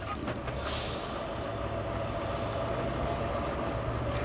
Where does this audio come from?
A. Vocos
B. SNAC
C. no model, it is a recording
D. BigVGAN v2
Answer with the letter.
C